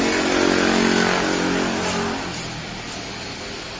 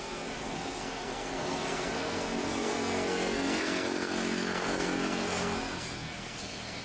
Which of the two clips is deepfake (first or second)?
second